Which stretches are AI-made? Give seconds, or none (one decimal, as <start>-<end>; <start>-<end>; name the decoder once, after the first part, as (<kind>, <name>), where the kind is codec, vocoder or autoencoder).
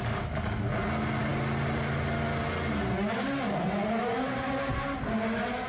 none